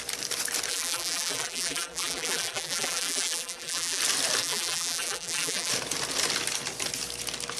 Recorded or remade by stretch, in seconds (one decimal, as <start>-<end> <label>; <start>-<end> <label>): 0.0-0.7 recorded; 0.7-4.0 remade; 4.0-4.4 recorded; 4.4-5.7 remade; 5.7-7.6 recorded